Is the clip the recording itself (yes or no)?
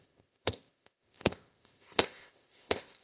no